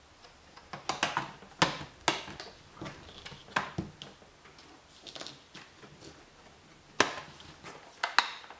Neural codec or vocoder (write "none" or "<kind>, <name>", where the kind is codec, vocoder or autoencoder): none